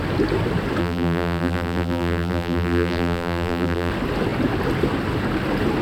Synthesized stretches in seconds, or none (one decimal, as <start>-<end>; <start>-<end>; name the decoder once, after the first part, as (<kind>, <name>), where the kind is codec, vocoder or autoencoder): 0.8-3.9 (vocoder, BigVGAN v2)